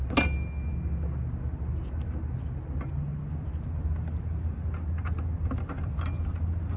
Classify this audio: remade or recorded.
recorded